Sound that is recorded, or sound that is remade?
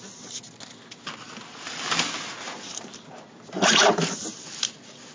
recorded